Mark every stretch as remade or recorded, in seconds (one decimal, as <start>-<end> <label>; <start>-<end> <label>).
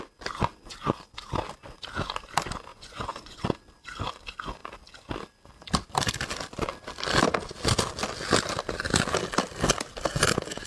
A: 0.0-2.7 recorded; 2.7-3.4 remade; 3.4-10.7 recorded